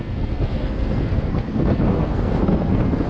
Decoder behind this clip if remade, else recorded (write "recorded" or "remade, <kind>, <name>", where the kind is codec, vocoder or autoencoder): remade, codec, SNAC